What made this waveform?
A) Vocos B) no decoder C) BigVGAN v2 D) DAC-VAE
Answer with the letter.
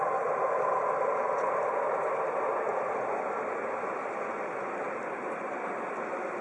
B